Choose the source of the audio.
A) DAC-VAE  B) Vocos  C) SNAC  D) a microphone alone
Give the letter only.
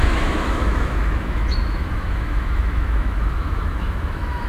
A